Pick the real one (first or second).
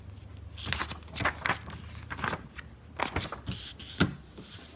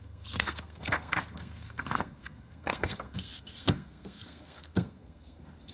first